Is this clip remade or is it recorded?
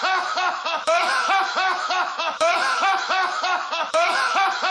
remade